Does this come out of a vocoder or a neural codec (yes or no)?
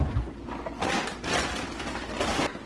no